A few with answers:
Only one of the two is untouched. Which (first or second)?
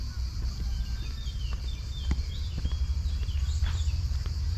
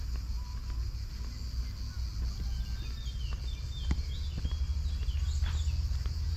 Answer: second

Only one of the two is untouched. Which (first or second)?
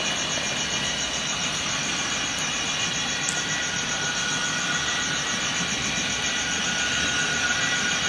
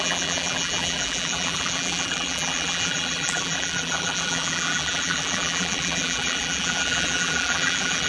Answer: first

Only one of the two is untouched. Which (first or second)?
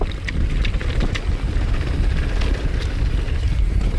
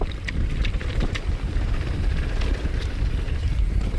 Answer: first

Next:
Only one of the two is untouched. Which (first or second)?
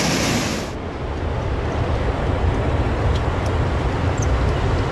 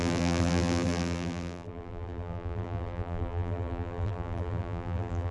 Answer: first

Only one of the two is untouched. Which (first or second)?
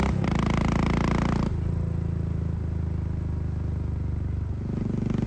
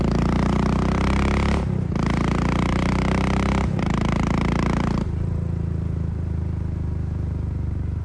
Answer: first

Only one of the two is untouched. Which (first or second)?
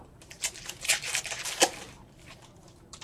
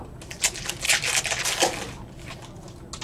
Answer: second